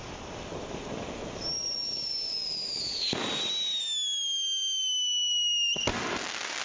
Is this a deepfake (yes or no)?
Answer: no